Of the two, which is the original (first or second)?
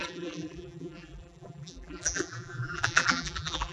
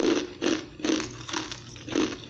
second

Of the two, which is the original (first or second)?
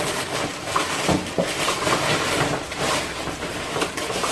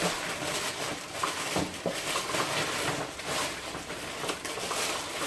first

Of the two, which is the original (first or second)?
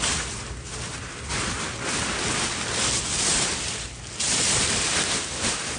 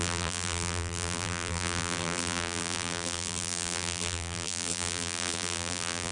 first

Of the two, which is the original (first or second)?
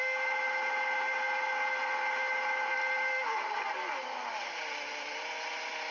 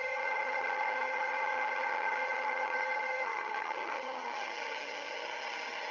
first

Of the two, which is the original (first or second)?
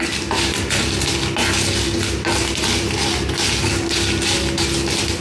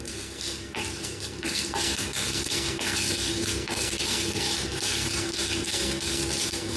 first